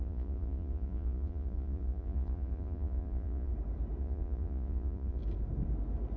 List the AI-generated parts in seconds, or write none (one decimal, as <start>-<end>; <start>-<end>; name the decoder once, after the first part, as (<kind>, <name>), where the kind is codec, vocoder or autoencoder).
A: 0.0-3.5 (vocoder, Vocos); 4.0-5.2